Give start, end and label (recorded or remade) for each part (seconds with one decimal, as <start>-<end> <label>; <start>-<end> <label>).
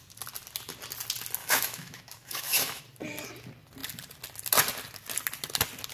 0.0-1.4 recorded; 1.4-2.8 remade; 2.8-5.9 recorded